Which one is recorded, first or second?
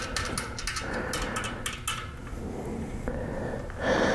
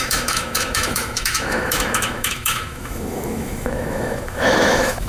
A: first